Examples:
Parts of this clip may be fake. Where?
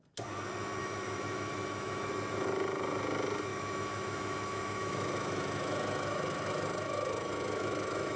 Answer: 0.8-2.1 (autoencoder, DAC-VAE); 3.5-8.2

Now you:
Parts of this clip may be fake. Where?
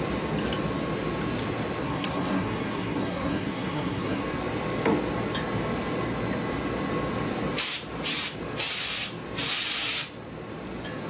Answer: 1.8-4.2 (codec, SNAC)